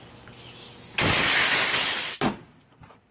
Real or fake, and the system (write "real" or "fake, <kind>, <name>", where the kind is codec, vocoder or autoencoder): real